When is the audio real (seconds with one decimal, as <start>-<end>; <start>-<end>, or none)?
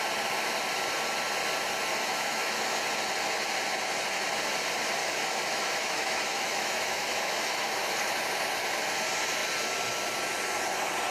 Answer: 0.0-1.9; 2.8-5.0; 7.5-11.1